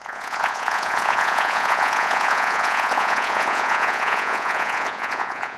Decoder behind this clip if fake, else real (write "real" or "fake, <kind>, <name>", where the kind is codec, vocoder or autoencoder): fake, vocoder, Vocos